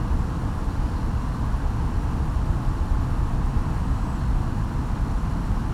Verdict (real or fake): real